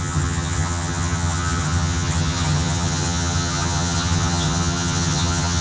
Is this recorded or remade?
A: remade